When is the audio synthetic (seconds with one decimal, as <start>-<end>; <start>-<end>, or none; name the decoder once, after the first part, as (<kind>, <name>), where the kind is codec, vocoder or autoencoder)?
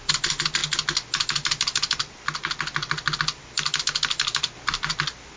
none